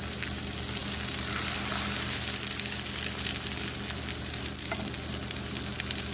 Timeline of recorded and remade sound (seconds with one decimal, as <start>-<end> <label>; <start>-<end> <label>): 0.0-6.1 recorded